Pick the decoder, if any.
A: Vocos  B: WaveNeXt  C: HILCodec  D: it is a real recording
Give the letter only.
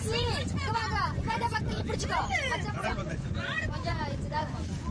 A